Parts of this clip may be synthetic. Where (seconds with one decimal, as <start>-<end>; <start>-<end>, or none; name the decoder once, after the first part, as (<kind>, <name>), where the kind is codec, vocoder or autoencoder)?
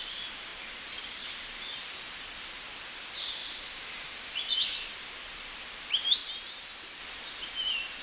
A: 3.4-4.5 (vocoder, BigVGAN v2); 6.2-7.0